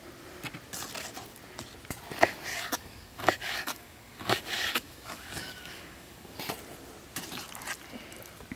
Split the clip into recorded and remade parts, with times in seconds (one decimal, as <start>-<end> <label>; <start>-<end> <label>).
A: 0.0-2.5 recorded; 2.5-6.4 remade; 6.4-8.6 recorded

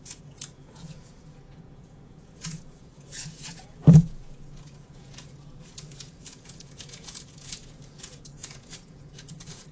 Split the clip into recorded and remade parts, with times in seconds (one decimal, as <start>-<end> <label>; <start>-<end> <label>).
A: 0.0-9.7 remade

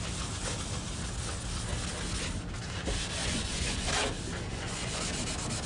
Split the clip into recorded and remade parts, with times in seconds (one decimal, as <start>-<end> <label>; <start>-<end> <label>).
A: 0.0-3.2 recorded; 3.2-3.9 remade; 3.9-4.5 recorded; 4.5-5.0 remade; 5.0-5.7 recorded